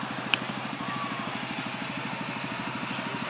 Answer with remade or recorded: recorded